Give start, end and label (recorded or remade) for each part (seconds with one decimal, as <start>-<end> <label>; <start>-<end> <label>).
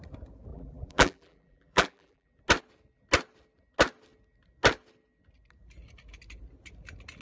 0.0-0.5 recorded; 0.5-2.4 remade; 2.4-7.2 recorded